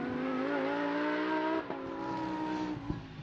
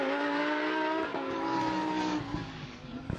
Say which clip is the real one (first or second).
first